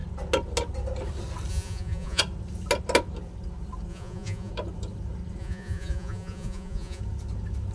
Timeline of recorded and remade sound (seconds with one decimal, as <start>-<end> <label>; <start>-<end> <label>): 0.0-1.5 recorded; 1.5-2.2 remade; 2.2-3.9 recorded; 3.9-4.5 remade; 4.5-5.4 recorded; 5.4-7.0 remade; 7.0-7.7 recorded